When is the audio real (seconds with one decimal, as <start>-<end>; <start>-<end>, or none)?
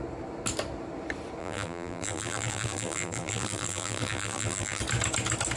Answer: 0.0-1.4; 4.8-5.6